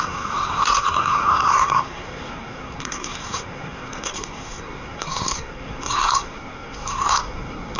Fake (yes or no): yes